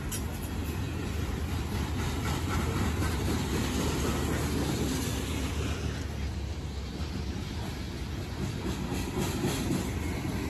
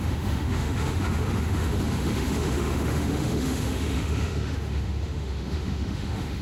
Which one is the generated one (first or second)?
second